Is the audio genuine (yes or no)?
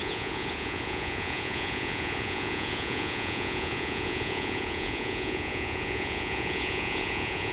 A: no